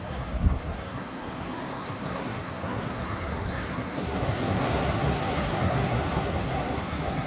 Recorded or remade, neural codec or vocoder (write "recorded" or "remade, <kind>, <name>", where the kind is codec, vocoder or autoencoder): remade, codec, SNAC